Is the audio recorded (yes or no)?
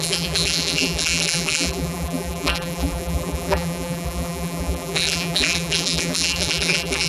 no